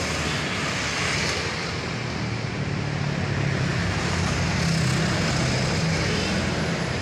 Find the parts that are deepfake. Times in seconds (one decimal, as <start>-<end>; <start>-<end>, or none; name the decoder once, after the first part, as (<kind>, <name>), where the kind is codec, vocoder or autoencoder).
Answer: none